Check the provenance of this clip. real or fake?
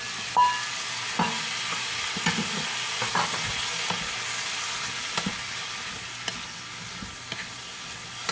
real